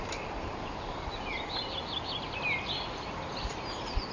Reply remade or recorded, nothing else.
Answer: recorded